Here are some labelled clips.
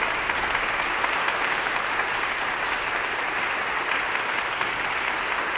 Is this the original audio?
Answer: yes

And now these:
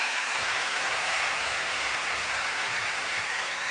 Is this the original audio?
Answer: no